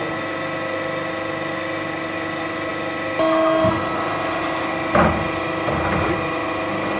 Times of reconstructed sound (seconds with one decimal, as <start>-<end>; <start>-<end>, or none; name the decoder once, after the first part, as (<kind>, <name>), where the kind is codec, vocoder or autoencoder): none